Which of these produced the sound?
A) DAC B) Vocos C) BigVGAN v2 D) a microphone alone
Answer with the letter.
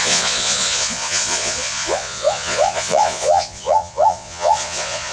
B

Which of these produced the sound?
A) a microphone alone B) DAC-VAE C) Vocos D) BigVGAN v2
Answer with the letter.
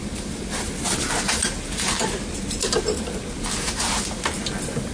A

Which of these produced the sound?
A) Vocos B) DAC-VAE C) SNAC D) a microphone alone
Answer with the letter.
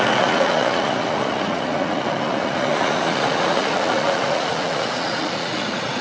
A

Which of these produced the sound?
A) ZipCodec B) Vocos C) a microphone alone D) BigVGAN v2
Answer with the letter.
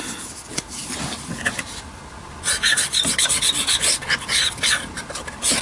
C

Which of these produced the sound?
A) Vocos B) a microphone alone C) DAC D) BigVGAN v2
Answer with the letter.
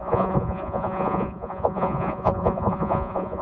A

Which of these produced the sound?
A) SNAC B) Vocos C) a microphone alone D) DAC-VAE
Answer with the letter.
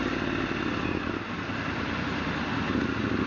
C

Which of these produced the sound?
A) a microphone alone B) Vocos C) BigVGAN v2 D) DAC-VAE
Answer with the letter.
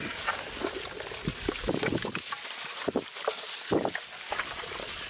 A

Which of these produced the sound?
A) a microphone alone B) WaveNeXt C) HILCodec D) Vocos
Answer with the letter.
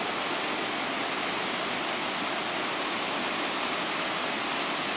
A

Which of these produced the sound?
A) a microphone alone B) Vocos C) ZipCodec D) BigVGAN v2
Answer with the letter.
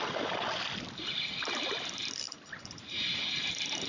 A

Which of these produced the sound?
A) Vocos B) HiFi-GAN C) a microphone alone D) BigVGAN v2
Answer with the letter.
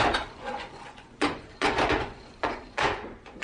A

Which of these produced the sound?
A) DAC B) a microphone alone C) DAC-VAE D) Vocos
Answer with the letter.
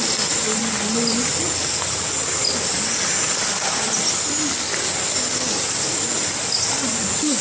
B